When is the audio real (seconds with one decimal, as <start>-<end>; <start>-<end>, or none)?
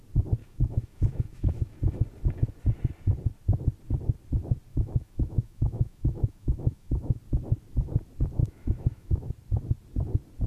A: 0.0-0.4; 1.8-4.7; 7.2-8.4; 9.3-10.5